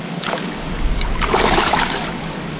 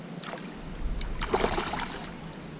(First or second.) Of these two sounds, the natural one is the second